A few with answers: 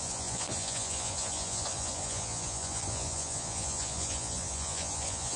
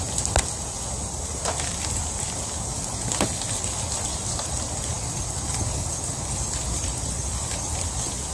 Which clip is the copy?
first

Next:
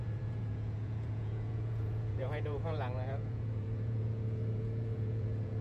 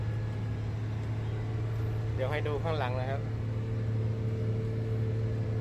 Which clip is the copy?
first